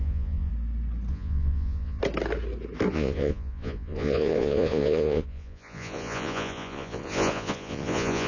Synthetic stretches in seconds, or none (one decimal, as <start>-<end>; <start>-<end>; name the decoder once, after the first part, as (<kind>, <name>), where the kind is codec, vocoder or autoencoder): 0.0-0.5 (vocoder, Vocos); 1.1-2.0; 2.9-8.3